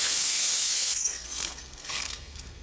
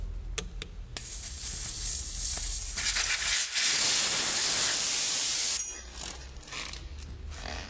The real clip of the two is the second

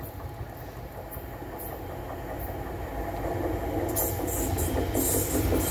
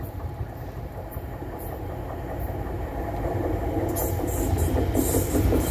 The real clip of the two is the first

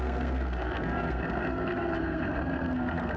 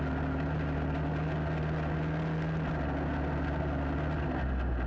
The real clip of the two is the second